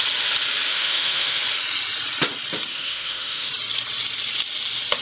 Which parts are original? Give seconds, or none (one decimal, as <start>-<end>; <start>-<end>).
0.0-0.7; 1.4-2.7; 3.5-5.0